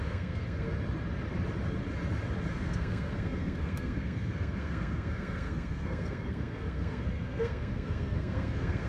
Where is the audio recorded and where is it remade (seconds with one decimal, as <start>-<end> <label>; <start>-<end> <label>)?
0.0-0.7 remade; 0.7-2.5 recorded; 2.5-8.9 remade